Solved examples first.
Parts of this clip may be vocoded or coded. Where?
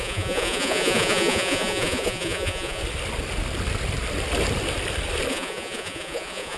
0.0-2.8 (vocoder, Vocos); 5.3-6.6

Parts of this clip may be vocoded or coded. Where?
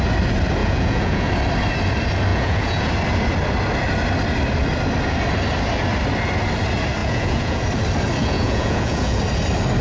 0.6-1.3 (vocoder, Vocos); 2.3-2.9; 7.0-7.6; 8.2-9.2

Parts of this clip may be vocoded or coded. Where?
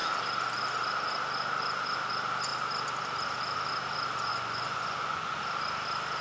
4.3-5.4 (vocoder, Vocos)